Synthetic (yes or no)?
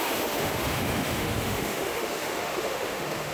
yes